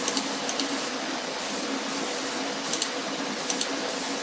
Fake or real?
real